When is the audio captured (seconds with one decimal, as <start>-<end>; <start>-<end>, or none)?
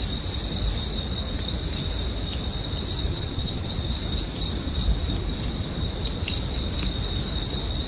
0.0-3.1; 3.7-7.9